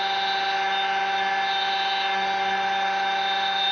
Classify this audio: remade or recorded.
recorded